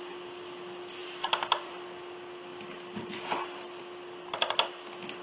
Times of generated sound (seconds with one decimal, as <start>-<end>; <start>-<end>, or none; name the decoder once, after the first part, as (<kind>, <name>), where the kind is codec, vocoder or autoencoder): none